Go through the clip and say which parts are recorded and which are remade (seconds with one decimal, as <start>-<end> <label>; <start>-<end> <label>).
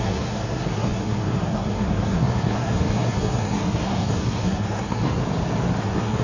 0.0-5.2 remade; 5.2-5.8 recorded; 5.8-6.2 remade